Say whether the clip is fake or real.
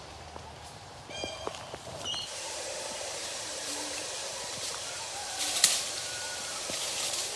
fake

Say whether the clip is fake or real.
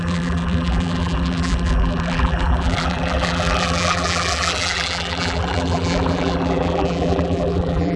fake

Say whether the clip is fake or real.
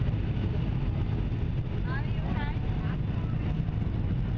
real